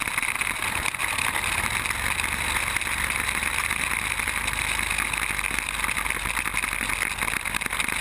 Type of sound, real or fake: real